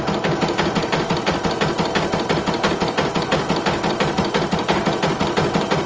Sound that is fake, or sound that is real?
real